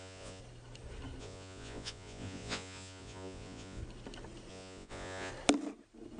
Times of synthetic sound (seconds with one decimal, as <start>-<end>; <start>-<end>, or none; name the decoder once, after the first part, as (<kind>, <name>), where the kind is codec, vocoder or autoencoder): 0.0-0.4 (vocoder, Vocos); 1.2-3.8; 4.5-5.3

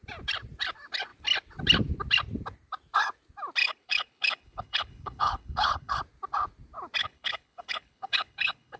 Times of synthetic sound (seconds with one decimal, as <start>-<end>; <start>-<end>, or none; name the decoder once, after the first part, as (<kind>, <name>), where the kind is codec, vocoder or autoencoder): 3.6-6.0 (codec, HILCodec); 7.0-8.8